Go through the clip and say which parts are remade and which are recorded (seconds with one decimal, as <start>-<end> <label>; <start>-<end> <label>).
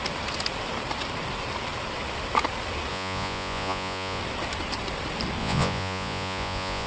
0.0-2.9 recorded; 2.9-4.2 remade; 4.2-5.4 recorded; 5.4-6.9 remade